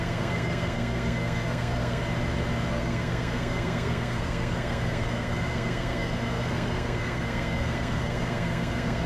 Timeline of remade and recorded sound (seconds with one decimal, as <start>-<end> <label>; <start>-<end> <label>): 0.0-2.0 remade; 2.0-2.7 recorded; 2.7-9.1 remade